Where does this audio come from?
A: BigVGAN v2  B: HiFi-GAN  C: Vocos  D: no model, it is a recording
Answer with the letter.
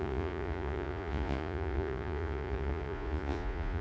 C